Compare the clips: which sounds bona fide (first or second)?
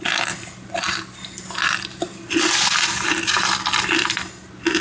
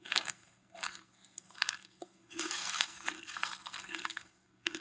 first